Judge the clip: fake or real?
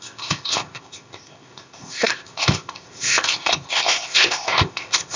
fake